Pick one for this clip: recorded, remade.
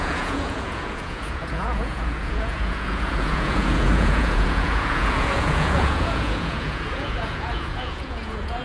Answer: remade